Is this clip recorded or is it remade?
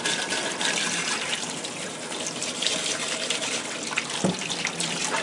recorded